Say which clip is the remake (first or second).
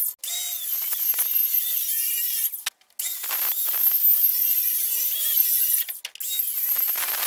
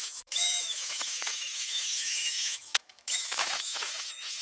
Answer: second